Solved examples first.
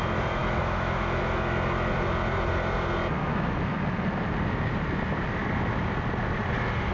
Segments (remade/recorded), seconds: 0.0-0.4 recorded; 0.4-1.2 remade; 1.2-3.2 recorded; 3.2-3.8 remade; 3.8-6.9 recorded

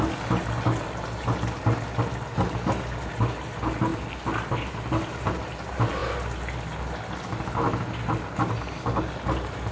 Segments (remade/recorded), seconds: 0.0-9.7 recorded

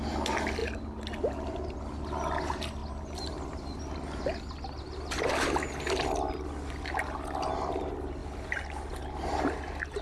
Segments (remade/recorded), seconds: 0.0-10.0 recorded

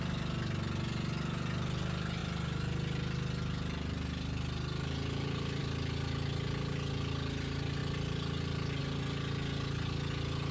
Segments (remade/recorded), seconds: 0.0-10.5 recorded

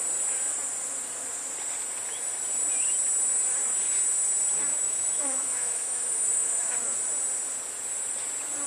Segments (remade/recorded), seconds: 0.0-4.7 recorded; 4.7-6.8 remade; 6.8-8.7 recorded

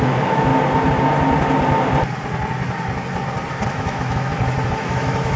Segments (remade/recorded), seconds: 0.0-0.5 remade; 0.5-3.7 recorded; 3.7-4.3 remade; 4.3-4.8 recorded; 4.8-5.4 remade